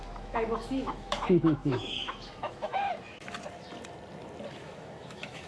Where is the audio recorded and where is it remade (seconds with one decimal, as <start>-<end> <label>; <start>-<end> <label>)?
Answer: 0.0-2.9 remade; 2.9-4.5 recorded; 4.5-5.5 remade